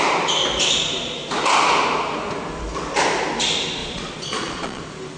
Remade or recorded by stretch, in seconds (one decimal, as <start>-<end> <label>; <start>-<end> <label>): 0.0-3.8 recorded; 3.8-4.8 remade; 4.8-5.2 recorded